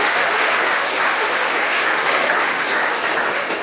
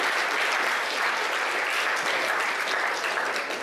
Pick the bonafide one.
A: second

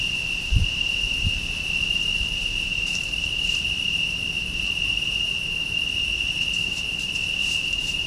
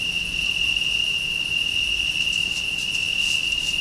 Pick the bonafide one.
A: second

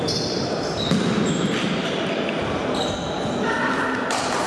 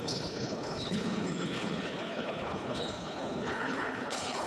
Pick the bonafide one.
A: first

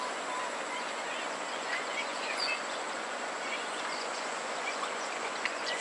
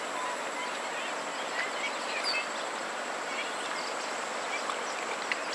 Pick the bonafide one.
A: second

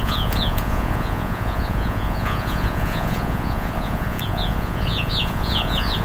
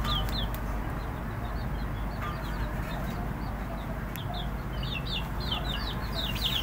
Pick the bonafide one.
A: second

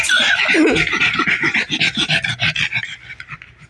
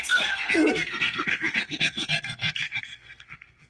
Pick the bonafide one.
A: first